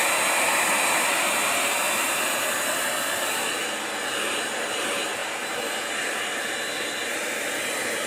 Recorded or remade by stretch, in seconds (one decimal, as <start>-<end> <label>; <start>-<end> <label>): 0.0-8.1 recorded